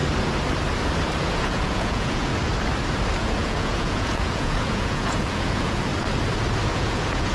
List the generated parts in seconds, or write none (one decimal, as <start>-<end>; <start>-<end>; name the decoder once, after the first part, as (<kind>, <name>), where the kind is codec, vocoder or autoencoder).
1.2-2.3 (vocoder, Vocos); 3.2-5.9; 6.7-7.3